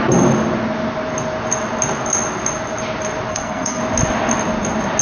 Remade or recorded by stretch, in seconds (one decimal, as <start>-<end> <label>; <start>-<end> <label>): 0.0-3.3 recorded; 3.3-3.8 remade; 3.8-5.0 recorded